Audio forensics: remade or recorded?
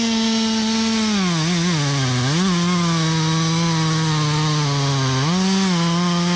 recorded